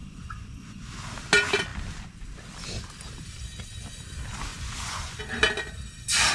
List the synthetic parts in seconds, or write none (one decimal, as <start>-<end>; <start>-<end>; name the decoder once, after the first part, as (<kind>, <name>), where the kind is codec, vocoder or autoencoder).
0.0-0.9 (vocoder, Vocos); 4.5-5.2